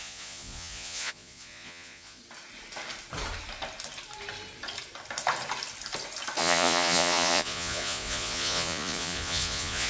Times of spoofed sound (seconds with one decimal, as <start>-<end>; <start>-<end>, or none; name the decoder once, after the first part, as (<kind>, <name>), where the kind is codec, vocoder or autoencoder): 0.0-2.2 (vocoder, Vocos); 6.4-9.9